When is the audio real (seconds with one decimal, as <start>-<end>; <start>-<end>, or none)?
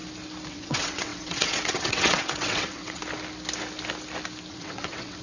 0.0-0.5; 3.0-4.5